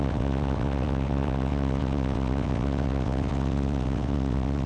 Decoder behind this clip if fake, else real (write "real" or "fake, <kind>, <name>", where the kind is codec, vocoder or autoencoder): fake, vocoder, WaveNeXt